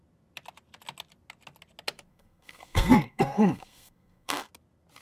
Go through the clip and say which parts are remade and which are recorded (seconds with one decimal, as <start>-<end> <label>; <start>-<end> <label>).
0.0-2.1 recorded; 2.1-4.5 remade; 4.5-5.0 recorded